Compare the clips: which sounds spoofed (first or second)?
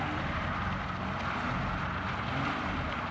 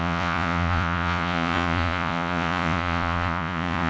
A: second